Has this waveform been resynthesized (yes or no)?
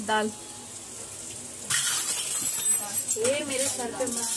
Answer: no